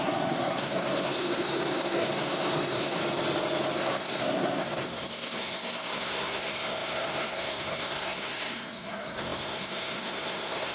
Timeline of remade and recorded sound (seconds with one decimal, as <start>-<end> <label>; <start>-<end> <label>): 0.0-3.0 remade; 3.0-3.8 recorded; 3.8-10.7 remade